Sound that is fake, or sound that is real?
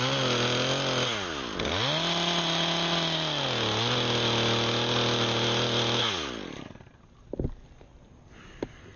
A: real